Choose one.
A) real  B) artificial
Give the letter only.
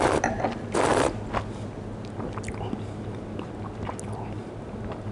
A